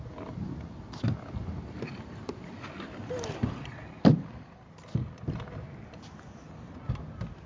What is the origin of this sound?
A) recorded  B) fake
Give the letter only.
A